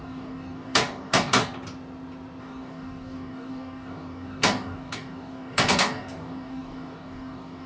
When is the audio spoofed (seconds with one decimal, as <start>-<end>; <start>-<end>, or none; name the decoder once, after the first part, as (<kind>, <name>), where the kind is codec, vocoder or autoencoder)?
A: 0.0-1.4 (codec, DAC); 2.4-7.7